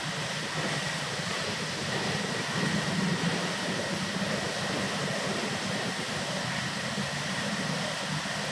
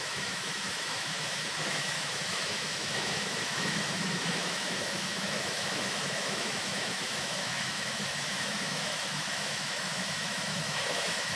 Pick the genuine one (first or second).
first